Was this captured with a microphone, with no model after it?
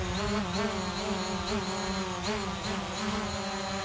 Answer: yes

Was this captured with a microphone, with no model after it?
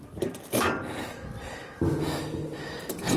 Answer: yes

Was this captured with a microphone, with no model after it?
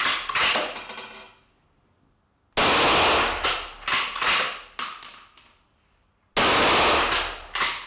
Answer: yes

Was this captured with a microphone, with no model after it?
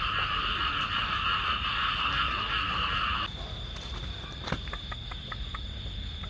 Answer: yes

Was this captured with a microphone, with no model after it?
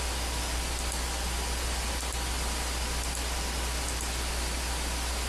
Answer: yes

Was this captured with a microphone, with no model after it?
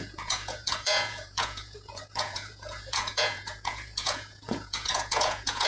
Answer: no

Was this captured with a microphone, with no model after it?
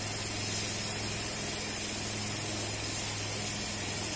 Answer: yes